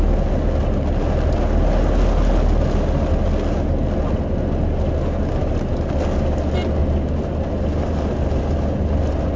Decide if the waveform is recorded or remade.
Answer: recorded